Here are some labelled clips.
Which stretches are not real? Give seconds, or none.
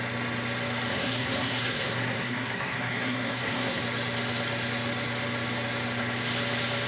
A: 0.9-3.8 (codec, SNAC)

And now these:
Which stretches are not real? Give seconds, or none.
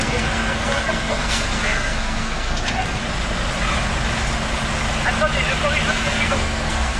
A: 0.0-3.0 (codec, SNAC); 5.9-7.0